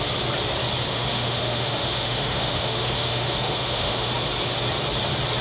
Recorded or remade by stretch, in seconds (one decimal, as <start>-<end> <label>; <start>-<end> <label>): 0.0-0.9 recorded; 0.9-4.1 remade; 4.1-5.4 recorded